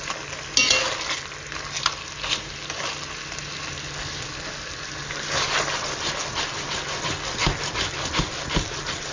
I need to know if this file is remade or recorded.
recorded